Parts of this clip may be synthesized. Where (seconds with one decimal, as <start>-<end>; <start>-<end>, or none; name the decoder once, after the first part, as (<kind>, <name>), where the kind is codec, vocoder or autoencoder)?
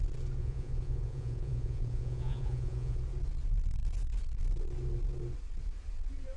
0.4-3.0 (vocoder, Vocos)